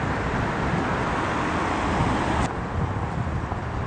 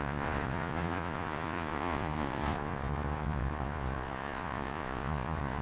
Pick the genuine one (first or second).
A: first